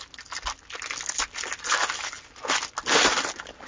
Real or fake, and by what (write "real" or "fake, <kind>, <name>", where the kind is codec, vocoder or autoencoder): real